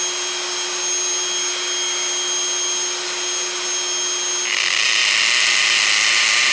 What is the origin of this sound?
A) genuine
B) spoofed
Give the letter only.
A